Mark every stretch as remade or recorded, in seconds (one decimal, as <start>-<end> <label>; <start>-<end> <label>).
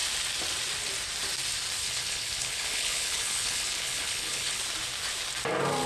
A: 0.0-1.8 recorded; 1.8-4.6 remade; 4.6-5.9 recorded